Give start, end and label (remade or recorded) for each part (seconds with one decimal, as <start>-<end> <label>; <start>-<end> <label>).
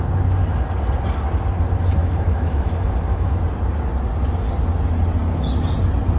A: 0.0-2.0 recorded; 2.0-3.4 remade; 3.4-6.2 recorded